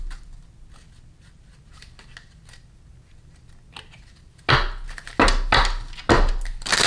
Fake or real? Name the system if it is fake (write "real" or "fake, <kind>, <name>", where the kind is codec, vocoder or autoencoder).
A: real